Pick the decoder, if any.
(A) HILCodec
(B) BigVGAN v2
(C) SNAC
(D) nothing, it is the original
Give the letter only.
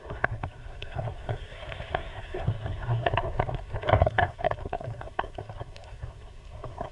C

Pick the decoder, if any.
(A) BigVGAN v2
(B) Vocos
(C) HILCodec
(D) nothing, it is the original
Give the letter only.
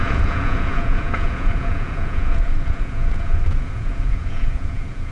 B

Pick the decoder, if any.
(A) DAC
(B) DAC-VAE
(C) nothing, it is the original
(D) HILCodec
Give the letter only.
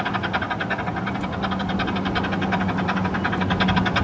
C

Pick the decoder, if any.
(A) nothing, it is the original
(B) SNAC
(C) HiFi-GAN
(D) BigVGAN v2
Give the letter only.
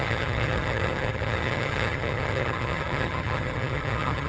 C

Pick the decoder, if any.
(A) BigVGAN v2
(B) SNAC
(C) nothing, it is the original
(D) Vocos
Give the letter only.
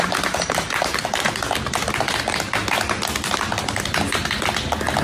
C